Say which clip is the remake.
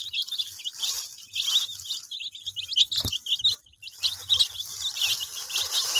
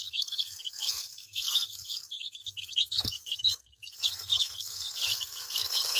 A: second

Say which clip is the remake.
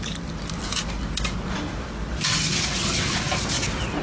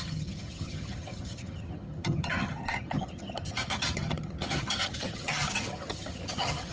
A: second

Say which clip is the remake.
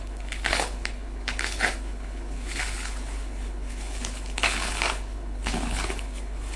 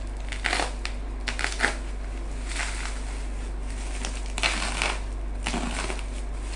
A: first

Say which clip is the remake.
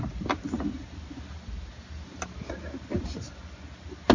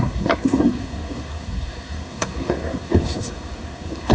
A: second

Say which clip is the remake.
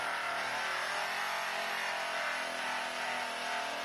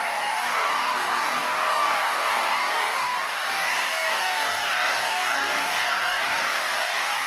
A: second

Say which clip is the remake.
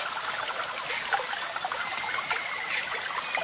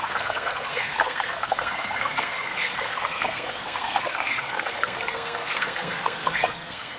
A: second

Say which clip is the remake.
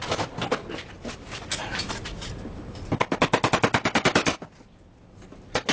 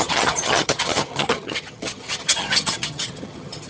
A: second